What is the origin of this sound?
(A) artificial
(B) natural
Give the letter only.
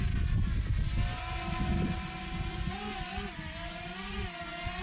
B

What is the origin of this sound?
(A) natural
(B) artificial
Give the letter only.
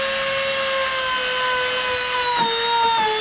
A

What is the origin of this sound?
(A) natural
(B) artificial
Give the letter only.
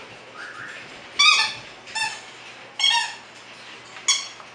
A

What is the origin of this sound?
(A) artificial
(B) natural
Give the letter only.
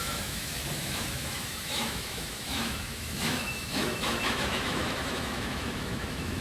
A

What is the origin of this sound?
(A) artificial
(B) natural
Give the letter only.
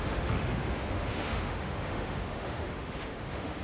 A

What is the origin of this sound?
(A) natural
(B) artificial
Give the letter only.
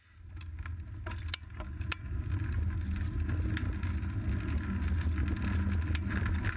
A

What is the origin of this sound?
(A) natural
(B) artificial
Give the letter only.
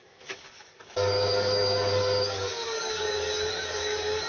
B